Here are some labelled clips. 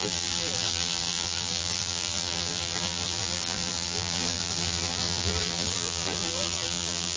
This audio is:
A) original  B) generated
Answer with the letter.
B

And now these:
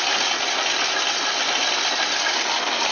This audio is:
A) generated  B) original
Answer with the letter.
B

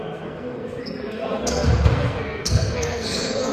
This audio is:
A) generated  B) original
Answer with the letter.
A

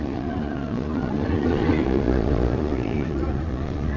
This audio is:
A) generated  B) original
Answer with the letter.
A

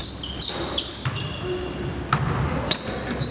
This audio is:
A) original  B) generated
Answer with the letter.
A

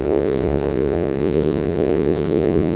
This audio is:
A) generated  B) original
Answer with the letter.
A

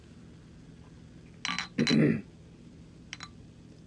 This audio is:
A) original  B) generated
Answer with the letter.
A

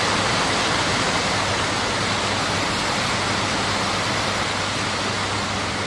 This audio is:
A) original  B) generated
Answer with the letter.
A